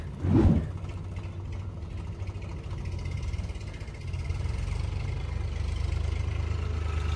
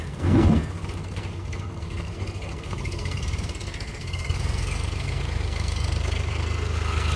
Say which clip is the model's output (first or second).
second